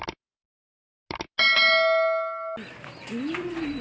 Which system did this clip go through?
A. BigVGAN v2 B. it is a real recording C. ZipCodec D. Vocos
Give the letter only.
B